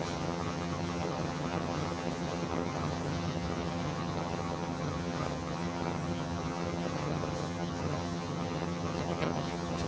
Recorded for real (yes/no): no